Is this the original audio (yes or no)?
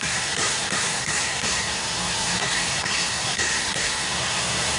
no